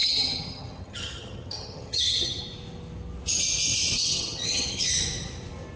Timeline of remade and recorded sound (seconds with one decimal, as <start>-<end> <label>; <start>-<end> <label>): 0.0-2.4 remade; 2.4-4.0 recorded; 4.0-4.9 remade; 4.9-5.8 recorded